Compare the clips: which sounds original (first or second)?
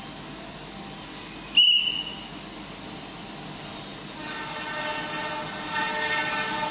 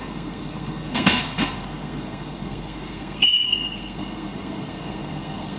first